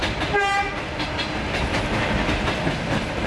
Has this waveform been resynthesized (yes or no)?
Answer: no